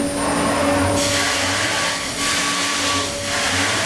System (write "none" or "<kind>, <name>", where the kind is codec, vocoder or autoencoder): none